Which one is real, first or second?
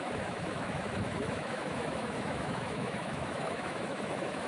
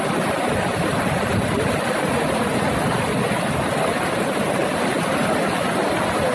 second